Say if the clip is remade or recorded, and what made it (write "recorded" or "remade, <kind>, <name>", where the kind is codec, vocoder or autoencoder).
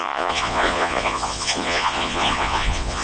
remade, vocoder, Vocos